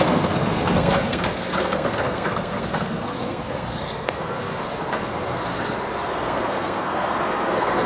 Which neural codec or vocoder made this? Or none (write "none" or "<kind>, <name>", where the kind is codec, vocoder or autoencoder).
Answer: codec, SNAC